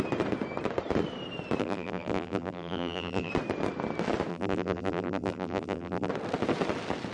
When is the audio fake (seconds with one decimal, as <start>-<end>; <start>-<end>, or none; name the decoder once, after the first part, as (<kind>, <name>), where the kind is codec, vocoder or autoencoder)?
1.6-3.3 (vocoder, BigVGAN v2); 4.3-6.1